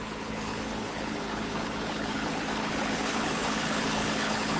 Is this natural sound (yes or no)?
no